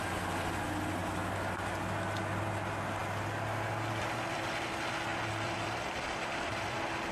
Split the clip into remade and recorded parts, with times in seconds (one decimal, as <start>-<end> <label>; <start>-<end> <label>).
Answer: 0.0-5.1 recorded; 5.1-6.5 remade; 6.5-7.1 recorded